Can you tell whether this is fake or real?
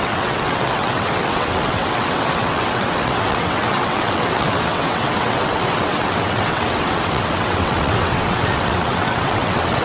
fake